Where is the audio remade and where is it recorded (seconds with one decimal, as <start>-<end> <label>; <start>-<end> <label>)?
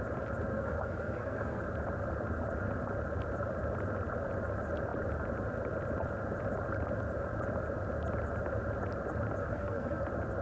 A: 0.0-0.5 recorded; 0.5-1.6 remade; 1.6-9.4 recorded; 9.4-10.0 remade; 10.0-10.4 recorded